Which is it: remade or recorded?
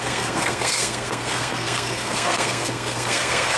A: remade